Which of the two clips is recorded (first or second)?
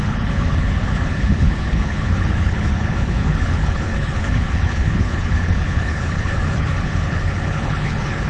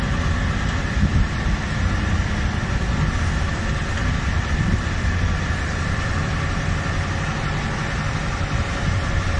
second